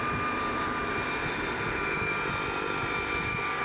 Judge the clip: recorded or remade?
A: remade